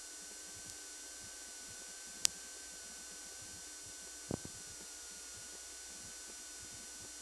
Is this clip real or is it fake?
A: real